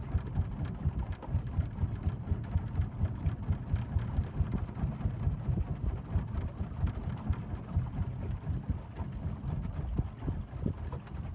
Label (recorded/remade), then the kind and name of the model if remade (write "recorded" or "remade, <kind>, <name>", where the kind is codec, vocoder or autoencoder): recorded